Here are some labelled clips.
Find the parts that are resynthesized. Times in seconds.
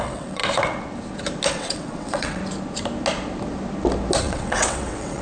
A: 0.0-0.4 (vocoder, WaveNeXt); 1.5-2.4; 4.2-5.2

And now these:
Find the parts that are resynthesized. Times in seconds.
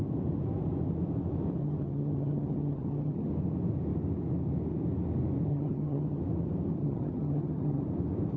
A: 1.6-3.3 (vocoder, HiFi-GAN); 5.5-6.2; 6.8-7.8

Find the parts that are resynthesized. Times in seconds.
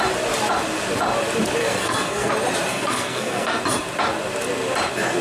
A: 1.6-2.3 (codec, SNAC); 2.7-3.6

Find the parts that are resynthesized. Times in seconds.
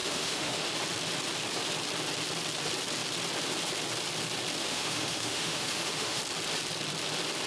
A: 0.0-0.7 (autoencoder, DAC-VAE); 4.6-6.2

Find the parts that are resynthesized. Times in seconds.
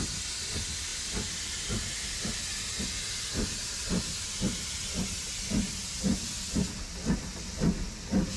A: none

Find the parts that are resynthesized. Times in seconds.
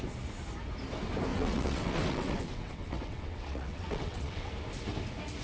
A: 1.3-4.5 (vocoder, WaveNeXt)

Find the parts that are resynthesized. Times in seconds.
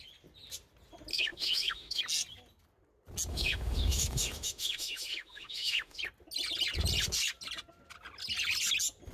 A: 1.1-2.0 (autoencoder, DAC-VAE); 3.3-6.0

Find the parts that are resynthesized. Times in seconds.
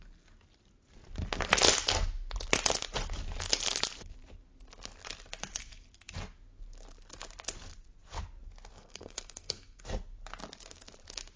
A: 8.7-9.8 (codec, SNAC)